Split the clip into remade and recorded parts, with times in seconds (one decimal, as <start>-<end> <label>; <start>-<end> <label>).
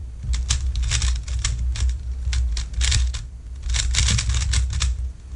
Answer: 0.0-5.4 recorded